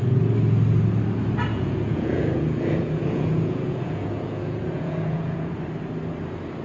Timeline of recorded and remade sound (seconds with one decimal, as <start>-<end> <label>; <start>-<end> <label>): 0.0-1.5 recorded; 1.5-5.5 remade; 5.5-6.6 recorded